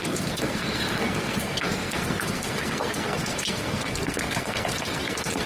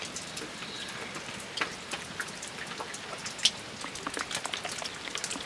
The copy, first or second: first